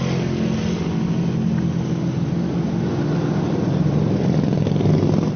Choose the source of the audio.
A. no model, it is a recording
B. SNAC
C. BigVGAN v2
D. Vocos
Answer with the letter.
A